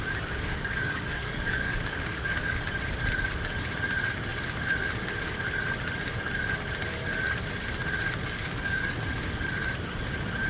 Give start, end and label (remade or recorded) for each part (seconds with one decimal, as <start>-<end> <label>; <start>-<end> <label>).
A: 0.0-0.5 recorded; 0.5-2.6 remade; 2.6-8.2 recorded; 8.2-9.0 remade; 9.0-10.5 recorded